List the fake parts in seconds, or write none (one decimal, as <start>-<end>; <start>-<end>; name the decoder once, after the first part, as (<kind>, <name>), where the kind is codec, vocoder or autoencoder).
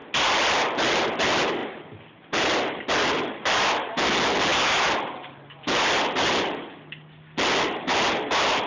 none